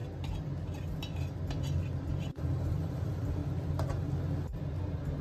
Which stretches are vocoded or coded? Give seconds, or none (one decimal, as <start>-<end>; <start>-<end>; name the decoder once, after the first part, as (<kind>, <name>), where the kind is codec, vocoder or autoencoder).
2.1-3.4 (vocoder, BigVGAN v2); 4.7-5.2